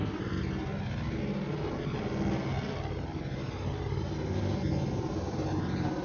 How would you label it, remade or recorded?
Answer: recorded